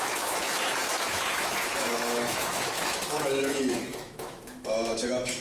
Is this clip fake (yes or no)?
yes